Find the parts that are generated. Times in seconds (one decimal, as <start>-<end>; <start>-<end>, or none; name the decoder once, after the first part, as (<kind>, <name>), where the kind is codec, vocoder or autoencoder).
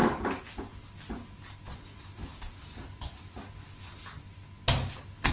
none